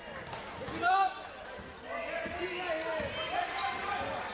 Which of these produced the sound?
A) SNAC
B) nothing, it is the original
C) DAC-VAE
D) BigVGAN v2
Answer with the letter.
B